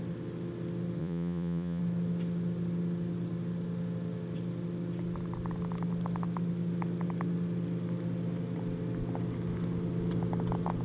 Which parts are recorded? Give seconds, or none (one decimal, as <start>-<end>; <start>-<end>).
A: 0.0-1.0; 1.8-10.8